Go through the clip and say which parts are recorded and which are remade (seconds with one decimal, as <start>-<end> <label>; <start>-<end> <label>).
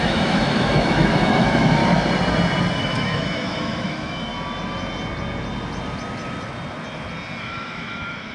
0.0-1.8 remade; 1.8-2.8 recorded; 2.8-4.3 remade; 4.3-7.4 recorded; 7.4-8.3 remade